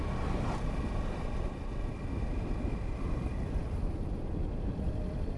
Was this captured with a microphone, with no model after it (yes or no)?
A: yes